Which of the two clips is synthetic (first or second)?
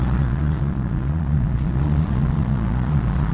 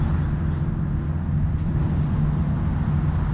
first